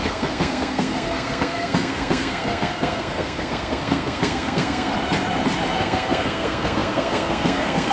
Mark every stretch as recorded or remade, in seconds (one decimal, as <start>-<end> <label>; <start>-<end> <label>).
0.0-4.9 remade; 4.9-5.8 recorded; 5.8-7.9 remade